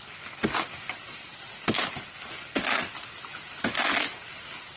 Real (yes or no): yes